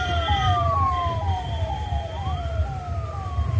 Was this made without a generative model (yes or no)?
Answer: no